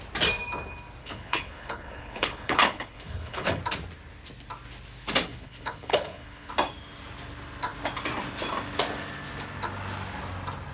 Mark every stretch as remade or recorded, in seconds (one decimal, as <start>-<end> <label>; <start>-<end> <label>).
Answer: 0.0-1.0 recorded; 1.0-3.6 remade; 3.6-5.3 recorded; 5.3-6.5 remade; 6.5-10.7 recorded